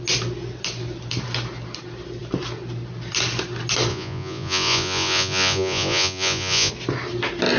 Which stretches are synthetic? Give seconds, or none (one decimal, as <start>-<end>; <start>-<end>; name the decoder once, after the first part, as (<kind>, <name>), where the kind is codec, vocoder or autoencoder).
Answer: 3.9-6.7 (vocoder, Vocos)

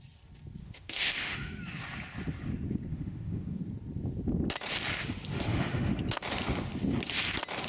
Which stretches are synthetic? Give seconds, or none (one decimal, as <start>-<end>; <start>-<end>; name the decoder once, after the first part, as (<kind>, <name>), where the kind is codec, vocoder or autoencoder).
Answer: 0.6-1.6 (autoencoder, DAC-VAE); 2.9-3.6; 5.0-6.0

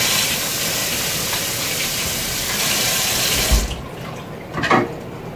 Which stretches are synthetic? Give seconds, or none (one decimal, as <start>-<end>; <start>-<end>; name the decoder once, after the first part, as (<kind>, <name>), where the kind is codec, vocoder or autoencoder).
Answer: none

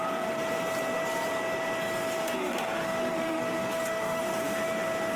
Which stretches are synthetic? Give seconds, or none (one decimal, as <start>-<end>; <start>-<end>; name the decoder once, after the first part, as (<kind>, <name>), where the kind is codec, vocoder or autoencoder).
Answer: 2.2-4.2 (autoencoder, DAC-VAE)

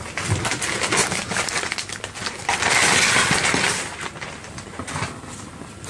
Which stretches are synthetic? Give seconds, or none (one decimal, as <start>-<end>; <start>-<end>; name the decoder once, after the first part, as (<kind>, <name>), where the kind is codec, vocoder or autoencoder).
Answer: none

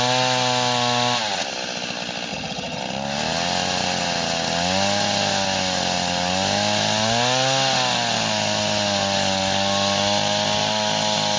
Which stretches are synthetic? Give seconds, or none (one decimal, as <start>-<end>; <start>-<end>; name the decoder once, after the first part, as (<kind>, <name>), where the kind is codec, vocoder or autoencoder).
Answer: 2.3-2.8 (vocoder, HiFi-GAN)